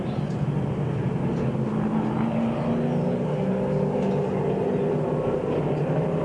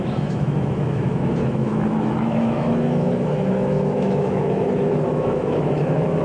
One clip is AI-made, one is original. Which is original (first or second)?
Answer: first